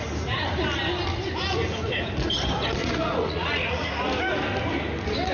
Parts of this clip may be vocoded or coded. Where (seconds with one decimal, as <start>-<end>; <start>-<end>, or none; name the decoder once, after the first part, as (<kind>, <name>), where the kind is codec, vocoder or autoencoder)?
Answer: 2.8-3.9 (vocoder, Vocos)